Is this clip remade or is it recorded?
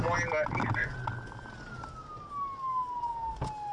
recorded